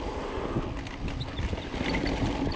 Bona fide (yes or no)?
yes